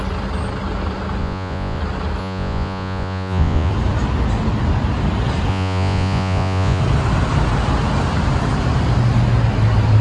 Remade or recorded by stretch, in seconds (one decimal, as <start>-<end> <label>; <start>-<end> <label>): 0.0-1.2 recorded; 1.2-1.8 remade; 1.8-2.2 recorded; 2.2-3.7 remade; 3.7-5.5 recorded; 5.5-6.8 remade; 6.8-10.0 recorded